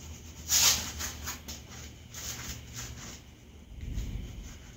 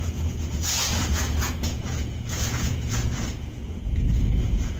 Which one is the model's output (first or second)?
second